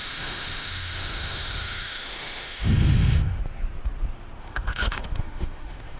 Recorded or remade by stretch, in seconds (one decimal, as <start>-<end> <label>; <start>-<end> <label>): 0.0-3.4 remade; 3.4-4.4 recorded; 4.4-6.0 remade